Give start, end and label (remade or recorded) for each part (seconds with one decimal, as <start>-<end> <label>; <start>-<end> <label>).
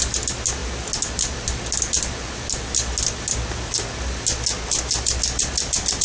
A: 0.0-6.0 recorded